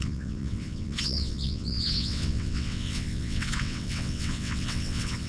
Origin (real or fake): fake